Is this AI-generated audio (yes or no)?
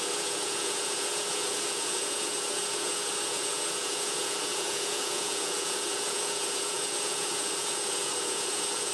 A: yes